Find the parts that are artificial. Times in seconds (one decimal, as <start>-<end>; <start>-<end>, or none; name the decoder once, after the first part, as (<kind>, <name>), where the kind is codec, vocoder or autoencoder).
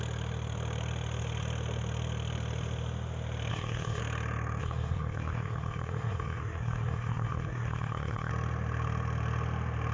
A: 3.5-4.0 (codec, SNAC); 4.6-8.3